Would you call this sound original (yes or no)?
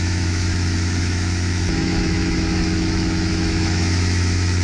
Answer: no